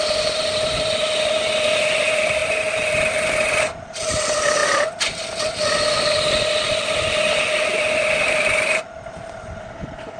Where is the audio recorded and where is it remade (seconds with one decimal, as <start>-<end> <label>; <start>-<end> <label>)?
0.0-9.6 recorded; 9.6-10.2 remade